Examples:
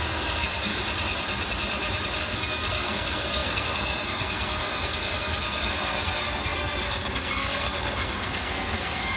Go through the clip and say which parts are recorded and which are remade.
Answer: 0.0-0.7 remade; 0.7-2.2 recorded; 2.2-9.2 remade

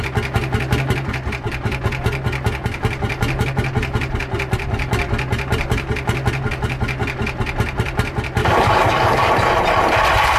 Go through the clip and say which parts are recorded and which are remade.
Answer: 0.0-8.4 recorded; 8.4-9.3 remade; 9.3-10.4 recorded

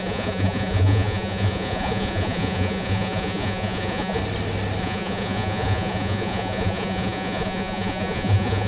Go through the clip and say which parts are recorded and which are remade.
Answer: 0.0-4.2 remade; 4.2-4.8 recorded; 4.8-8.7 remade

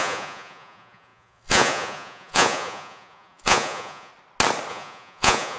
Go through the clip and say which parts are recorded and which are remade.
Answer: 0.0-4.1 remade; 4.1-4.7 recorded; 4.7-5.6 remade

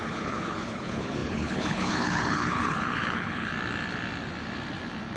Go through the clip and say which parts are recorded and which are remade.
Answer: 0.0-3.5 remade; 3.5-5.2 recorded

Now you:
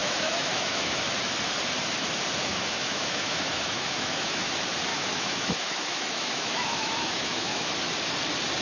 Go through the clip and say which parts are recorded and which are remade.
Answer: 0.0-1.0 remade; 1.0-2.4 recorded; 2.4-4.4 remade; 4.4-4.9 recorded; 4.9-7.7 remade; 7.7-8.6 recorded